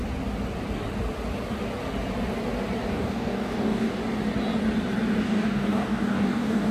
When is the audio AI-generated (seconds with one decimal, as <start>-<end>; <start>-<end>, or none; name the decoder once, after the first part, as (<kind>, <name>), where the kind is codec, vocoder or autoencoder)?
2.9-4.0 (codec, DAC); 5.2-6.7